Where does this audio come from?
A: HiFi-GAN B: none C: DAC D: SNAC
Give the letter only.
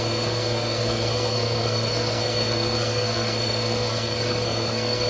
D